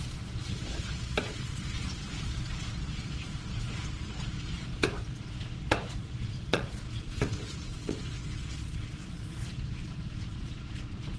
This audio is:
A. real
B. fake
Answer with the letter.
B